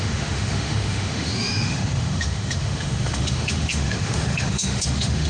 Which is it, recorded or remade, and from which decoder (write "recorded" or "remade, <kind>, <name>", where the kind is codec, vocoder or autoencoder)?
remade, autoencoder, DAC-VAE